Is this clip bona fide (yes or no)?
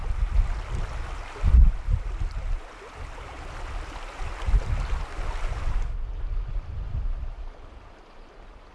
yes